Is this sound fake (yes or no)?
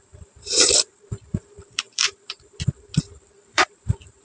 yes